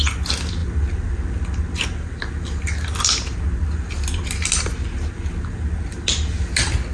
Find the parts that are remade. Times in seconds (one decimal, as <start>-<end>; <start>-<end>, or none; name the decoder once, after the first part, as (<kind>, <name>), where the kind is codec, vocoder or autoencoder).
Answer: none

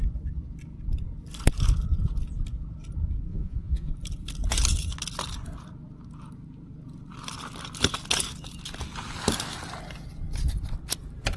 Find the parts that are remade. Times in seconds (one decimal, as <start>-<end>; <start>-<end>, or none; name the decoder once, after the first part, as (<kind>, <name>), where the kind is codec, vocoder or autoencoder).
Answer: 3.3-3.9 (vocoder, Vocos)

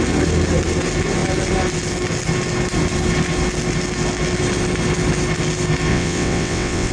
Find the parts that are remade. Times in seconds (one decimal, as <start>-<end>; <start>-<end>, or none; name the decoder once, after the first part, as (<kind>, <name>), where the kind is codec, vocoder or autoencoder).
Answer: 5.9-6.9 (vocoder, WaveNeXt)